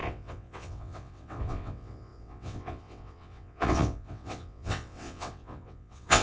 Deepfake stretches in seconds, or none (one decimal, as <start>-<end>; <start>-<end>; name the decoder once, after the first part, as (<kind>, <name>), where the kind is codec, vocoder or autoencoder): 0.0-6.2 (vocoder, WaveNeXt)